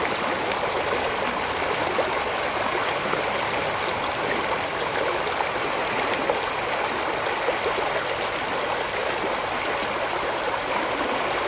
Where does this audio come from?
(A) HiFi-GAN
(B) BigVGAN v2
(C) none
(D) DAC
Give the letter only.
C